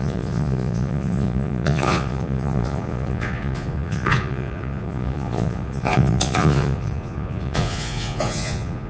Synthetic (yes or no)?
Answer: yes